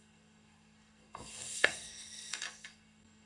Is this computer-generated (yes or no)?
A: yes